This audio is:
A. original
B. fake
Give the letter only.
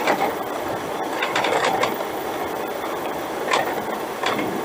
A